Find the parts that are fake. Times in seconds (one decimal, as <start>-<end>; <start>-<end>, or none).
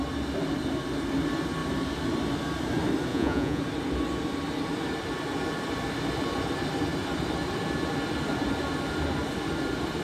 3.1-3.6